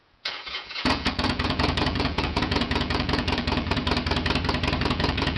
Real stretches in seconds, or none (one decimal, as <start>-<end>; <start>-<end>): 3.8-4.8